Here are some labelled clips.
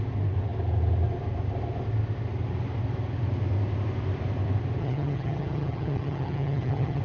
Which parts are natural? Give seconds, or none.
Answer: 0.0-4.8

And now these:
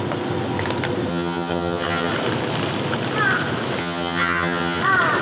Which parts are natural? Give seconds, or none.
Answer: 0.0-1.1; 2.1-3.8; 4.8-5.2

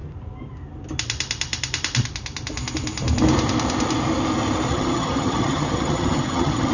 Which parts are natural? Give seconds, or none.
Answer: 0.0-4.7